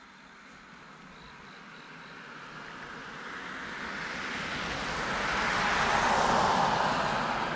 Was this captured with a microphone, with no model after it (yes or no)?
yes